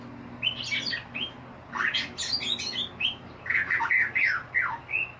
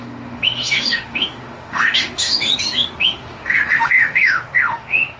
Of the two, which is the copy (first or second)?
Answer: second